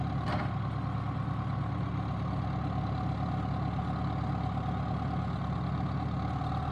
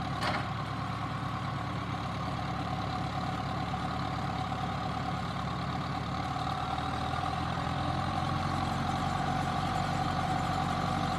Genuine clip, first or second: first